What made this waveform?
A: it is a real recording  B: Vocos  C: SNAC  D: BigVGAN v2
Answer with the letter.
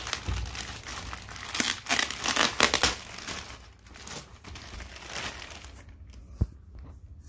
A